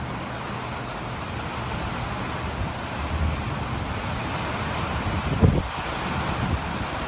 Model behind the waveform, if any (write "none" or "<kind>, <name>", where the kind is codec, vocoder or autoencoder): none